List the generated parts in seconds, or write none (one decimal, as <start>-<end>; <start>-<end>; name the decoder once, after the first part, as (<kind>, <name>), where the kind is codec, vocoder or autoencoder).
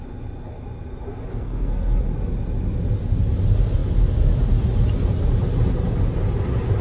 1.3-2.0 (codec, SNAC)